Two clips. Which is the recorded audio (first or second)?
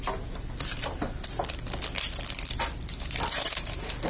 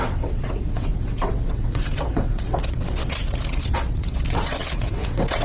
first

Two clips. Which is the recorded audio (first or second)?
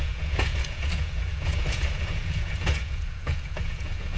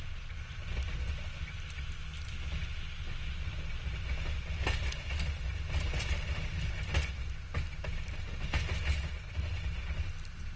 second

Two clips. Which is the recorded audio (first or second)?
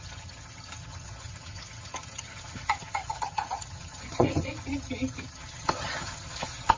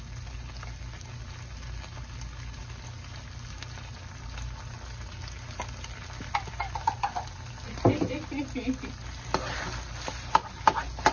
second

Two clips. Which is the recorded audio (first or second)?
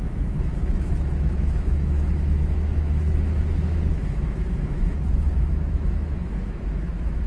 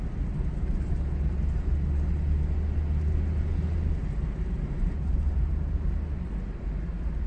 second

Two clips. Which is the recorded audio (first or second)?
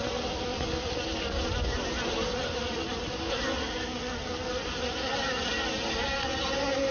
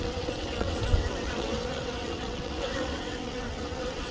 first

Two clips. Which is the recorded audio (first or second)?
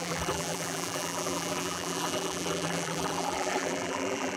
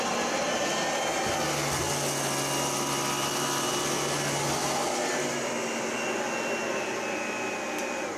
second